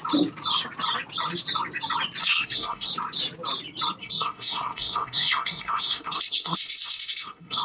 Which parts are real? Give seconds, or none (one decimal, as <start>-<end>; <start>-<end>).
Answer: 0.0-2.2; 2.9-4.0